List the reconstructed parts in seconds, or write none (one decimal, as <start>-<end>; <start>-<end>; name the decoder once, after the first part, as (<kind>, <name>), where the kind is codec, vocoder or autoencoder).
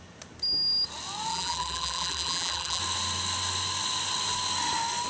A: 1.3-2.8 (vocoder, BigVGAN v2)